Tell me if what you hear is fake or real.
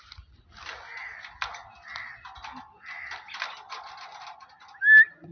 real